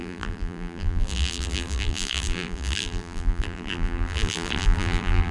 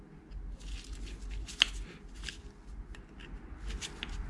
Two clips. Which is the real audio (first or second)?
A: second